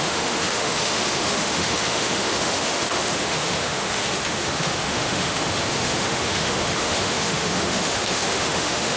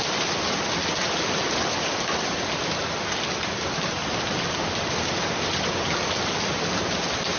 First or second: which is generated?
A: first